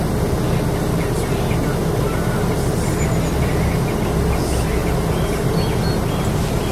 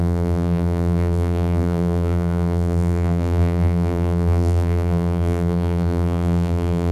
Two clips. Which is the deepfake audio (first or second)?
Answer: second